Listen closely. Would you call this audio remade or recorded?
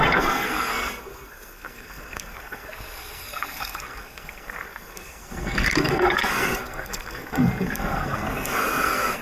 remade